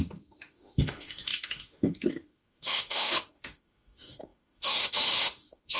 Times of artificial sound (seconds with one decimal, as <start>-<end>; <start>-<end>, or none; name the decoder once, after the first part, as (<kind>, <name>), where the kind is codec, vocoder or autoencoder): 0.0-5.8 (autoencoder, DAC-VAE)

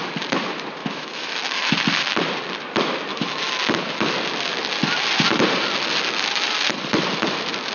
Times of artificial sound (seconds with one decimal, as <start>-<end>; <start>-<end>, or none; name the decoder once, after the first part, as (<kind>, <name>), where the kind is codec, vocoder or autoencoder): 0.8-1.7 (autoencoder, DAC-VAE); 3.1-3.6

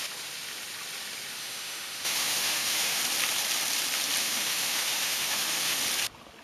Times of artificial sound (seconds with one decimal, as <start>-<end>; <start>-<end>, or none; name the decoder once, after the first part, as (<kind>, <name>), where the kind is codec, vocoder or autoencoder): 1.4-3.0 (autoencoder, DAC-VAE); 4.2-5.8

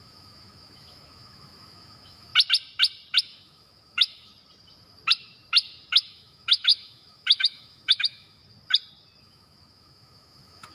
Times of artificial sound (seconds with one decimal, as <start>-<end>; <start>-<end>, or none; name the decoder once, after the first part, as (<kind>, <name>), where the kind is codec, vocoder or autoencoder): 0.0-2.3 (autoencoder, DAC-VAE); 3.2-4.3; 5.9-8.4; 9.2-10.7

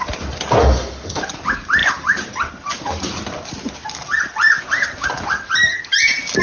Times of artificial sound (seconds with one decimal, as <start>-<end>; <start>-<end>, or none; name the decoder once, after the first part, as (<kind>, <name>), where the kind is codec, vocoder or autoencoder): 0.6-1.2 (autoencoder, DAC-VAE)